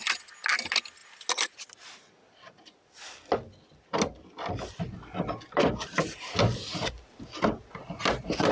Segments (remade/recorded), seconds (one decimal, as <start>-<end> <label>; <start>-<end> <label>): 0.0-8.5 recorded